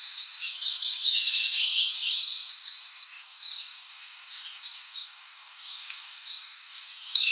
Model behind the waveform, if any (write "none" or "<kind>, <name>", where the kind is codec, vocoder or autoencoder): codec, DAC